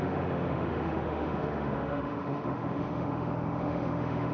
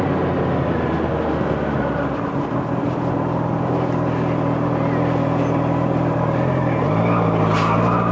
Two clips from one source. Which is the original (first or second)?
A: second